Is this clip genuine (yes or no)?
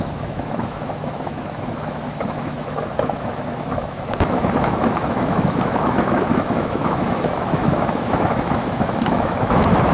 no